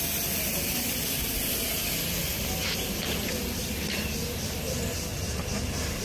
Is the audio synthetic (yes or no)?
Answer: no